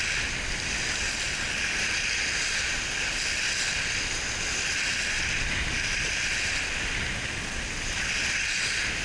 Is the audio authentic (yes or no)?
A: yes